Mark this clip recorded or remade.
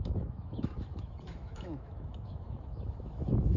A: remade